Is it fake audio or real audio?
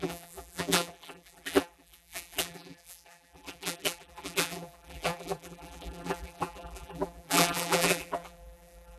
fake